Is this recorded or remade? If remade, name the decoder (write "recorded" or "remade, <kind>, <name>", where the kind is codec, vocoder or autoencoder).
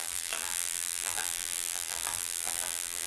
remade, vocoder, BigVGAN v2